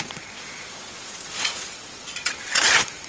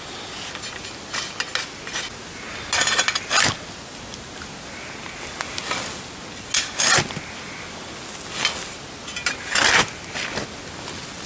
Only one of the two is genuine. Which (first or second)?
second